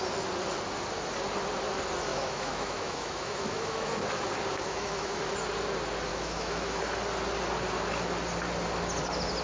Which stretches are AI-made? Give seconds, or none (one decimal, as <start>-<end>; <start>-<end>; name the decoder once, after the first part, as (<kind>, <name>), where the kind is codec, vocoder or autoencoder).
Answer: 2.1-4.1 (autoencoder, DAC-VAE); 4.5-5.2; 6.1-6.8

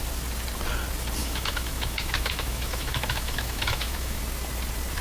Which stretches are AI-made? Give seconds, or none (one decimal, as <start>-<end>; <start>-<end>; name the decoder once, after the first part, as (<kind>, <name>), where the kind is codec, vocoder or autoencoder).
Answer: 1.2-4.2 (autoencoder, DAC-VAE)

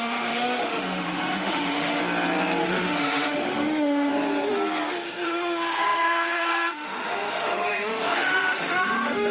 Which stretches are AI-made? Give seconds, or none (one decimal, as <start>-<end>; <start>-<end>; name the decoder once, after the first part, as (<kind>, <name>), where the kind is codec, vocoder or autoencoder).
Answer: 0.0-2.0 (autoencoder, DAC-VAE); 2.6-4.1; 4.9-9.3

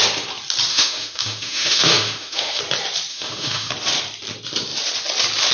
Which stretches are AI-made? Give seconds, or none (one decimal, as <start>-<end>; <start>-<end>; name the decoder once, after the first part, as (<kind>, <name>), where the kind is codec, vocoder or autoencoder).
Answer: 0.7-2.6 (autoencoder, DAC-VAE); 3.1-3.7

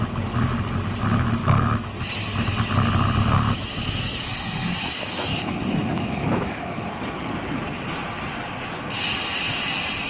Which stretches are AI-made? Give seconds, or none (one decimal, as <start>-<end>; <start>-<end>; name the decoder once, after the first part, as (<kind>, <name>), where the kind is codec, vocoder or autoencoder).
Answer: 1.4-1.9 (autoencoder, DAC-VAE); 3.2-6.6

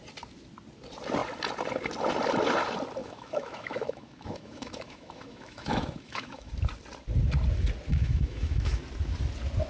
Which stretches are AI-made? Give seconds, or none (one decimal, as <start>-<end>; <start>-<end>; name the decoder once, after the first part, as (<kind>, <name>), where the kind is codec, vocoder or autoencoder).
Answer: 3.0-6.5 (autoencoder, DAC-VAE); 7.9-8.8